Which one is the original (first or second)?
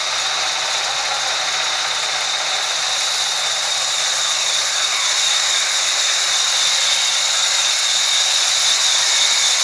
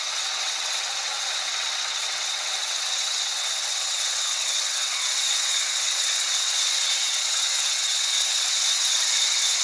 first